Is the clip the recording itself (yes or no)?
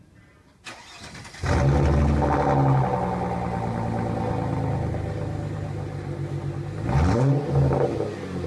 yes